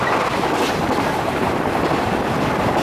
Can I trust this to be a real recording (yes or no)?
yes